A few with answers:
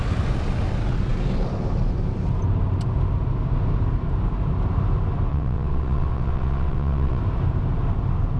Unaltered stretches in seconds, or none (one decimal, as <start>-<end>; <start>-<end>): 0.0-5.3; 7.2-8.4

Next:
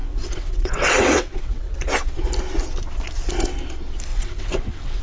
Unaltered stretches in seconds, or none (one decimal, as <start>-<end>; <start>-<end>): 1.8-4.1

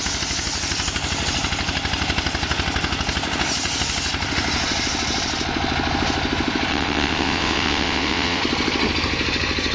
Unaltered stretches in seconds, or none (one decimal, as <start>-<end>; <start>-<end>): 0.0-6.7; 8.4-9.7